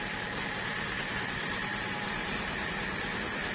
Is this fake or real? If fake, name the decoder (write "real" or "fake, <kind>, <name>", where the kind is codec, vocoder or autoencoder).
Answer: real